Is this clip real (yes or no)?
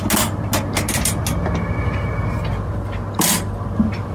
yes